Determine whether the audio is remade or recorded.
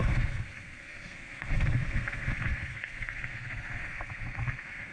remade